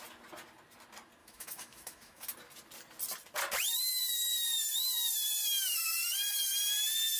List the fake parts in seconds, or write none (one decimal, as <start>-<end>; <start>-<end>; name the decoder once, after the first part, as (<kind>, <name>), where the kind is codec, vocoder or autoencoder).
1.2-2.3 (autoencoder, DAC-VAE)